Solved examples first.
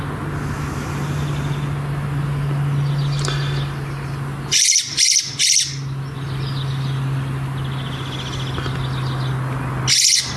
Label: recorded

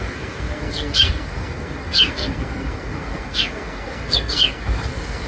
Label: remade